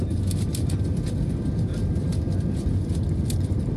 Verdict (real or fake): real